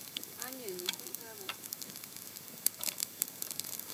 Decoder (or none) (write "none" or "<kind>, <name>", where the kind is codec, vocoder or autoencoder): codec, DAC